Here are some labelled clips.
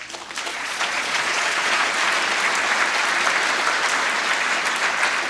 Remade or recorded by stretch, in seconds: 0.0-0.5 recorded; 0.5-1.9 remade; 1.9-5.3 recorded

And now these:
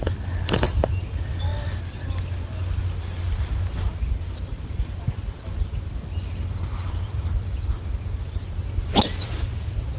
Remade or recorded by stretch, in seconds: 0.0-10.0 recorded